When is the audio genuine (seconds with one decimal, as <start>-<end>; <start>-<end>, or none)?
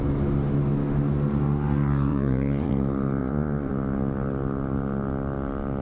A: 0.0-2.1; 2.7-3.2; 3.7-5.8